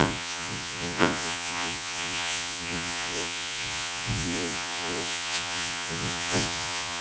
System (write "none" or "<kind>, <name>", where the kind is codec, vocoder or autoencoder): vocoder, Vocos